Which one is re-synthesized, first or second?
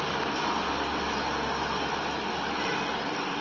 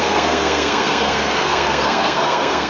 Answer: second